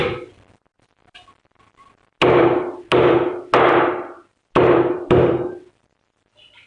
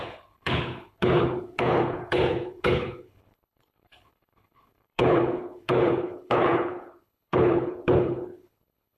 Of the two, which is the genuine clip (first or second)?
first